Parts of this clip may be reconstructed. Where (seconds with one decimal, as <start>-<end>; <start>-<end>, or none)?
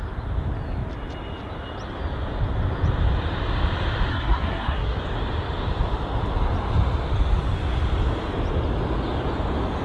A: 4.1-5.0